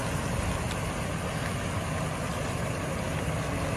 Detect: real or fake real